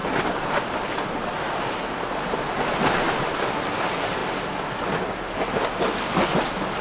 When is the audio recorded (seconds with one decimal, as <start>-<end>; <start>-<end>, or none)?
0.0-6.8